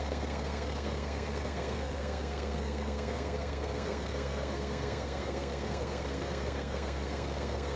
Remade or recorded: remade